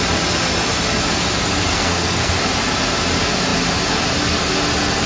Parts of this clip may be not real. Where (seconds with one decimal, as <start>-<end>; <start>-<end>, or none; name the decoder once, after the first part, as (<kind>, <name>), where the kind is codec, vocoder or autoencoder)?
1.7-2.4 (codec, SNAC)